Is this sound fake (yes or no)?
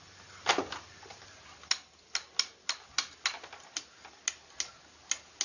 no